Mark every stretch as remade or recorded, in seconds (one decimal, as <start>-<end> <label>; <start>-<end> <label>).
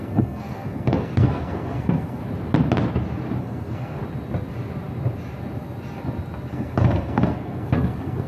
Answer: 0.0-2.2 remade; 2.2-3.4 recorded; 3.4-4.0 remade; 4.0-6.5 recorded; 6.5-8.3 remade